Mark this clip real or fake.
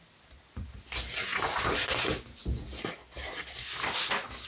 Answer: real